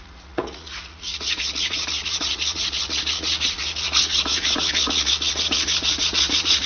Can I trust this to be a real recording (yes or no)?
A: no